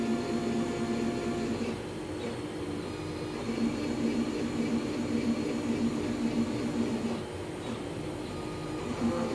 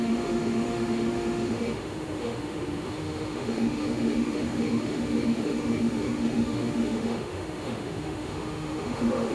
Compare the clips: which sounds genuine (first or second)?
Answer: first